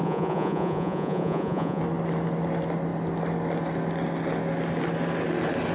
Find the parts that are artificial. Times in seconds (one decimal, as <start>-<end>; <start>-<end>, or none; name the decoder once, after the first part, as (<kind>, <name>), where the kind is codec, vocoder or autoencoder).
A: 0.0-1.8 (vocoder, Vocos)